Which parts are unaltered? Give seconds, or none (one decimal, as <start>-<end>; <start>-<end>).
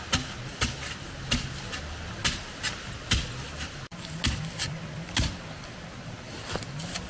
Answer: 0.0-7.1